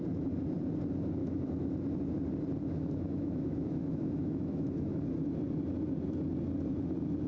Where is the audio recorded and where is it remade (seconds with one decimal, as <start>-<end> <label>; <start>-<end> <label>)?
0.0-1.2 recorded; 1.2-1.7 remade; 1.7-2.6 recorded; 2.6-5.0 remade; 5.0-7.3 recorded